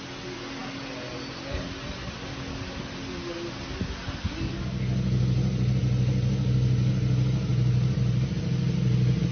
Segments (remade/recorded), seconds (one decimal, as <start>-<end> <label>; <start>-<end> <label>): 0.0-7.5 recorded; 7.5-8.4 remade; 8.4-9.3 recorded